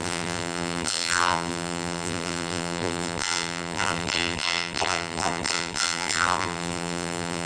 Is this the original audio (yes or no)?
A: no